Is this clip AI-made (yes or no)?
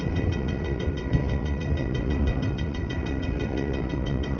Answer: yes